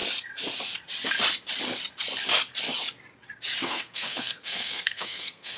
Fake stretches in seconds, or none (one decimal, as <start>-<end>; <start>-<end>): 3.6-5.6